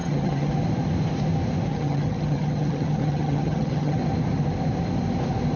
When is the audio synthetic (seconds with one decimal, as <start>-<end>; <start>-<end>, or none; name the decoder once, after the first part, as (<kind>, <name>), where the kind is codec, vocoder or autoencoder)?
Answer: 0.0-0.5 (vocoder, HiFi-GAN); 1.7-4.0